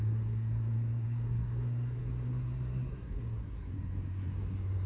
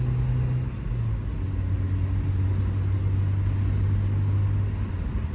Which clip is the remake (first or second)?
first